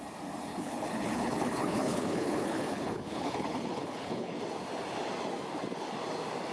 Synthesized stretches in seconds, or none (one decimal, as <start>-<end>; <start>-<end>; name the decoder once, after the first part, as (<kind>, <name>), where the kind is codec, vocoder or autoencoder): 0.5-4.4 (codec, HILCodec)